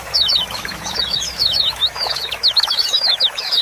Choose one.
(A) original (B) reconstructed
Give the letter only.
B